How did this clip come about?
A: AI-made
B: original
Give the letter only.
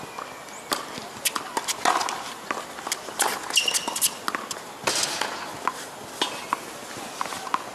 B